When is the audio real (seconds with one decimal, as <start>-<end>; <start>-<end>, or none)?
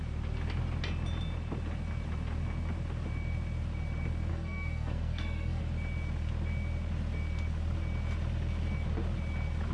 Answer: 0.0-4.3; 5.6-9.7